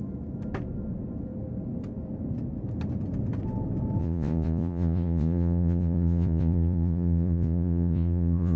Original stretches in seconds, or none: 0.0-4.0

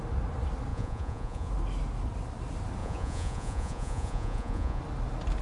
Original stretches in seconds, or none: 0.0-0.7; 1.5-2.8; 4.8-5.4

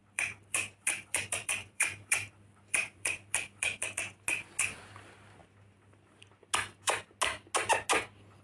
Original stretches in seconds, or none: 4.0-8.4